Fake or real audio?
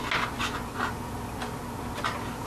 real